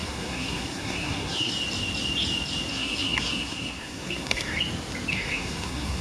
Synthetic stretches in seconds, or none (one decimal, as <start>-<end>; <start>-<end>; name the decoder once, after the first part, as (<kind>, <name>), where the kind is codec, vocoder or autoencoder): 0.0-1.5 (codec, SNAC); 2.7-4.6; 5.1-6.0